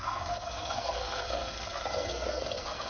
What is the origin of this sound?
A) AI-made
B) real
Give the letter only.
A